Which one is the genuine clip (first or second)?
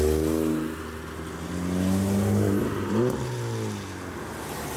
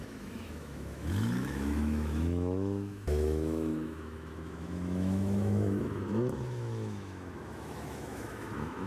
first